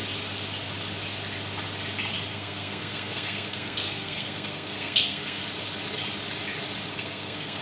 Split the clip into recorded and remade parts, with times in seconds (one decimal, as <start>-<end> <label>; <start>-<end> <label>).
0.0-2.3 recorded; 2.3-5.4 remade; 5.4-6.9 recorded; 6.9-7.6 remade